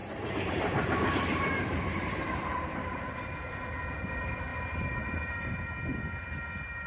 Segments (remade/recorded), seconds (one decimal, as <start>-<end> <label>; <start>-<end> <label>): 0.0-3.1 remade; 3.1-4.5 recorded; 4.5-5.6 remade; 5.6-6.9 recorded